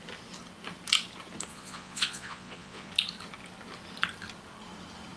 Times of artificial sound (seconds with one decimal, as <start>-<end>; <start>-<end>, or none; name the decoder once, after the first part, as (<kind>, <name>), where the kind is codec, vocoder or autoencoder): 1.5-2.9 (vocoder, Vocos)

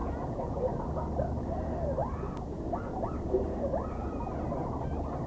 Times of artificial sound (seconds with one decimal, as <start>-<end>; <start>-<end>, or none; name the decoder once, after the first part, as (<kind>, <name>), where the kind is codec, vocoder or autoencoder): 0.0-0.8 (vocoder, Vocos)

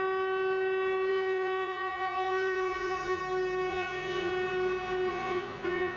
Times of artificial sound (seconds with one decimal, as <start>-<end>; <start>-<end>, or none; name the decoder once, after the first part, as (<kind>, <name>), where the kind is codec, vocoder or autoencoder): 1.1-3.2 (vocoder, Vocos); 3.7-4.3; 5.1-6.0

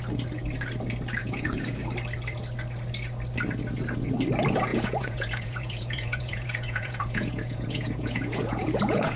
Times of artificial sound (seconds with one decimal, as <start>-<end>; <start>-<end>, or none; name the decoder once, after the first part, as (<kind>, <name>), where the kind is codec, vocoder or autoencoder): 1.2-1.8 (vocoder, Vocos); 4.7-9.2

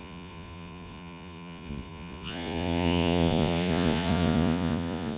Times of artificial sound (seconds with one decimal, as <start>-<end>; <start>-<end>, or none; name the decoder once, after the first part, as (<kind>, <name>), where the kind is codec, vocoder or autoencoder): 0.0-5.2 (vocoder, Vocos)

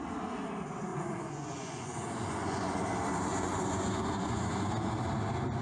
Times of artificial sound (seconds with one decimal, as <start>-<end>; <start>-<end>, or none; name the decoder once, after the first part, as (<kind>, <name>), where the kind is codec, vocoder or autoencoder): 0.9-2.8 (vocoder, Vocos); 3.3-4.9

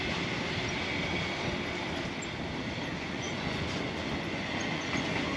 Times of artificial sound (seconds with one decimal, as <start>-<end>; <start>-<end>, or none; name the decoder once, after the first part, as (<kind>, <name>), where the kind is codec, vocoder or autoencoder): 2.9-5.4 (vocoder, Vocos)

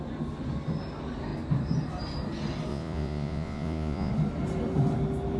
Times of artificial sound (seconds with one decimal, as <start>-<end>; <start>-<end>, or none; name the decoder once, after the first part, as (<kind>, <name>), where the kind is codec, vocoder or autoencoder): 2.7-4.1 (vocoder, Vocos)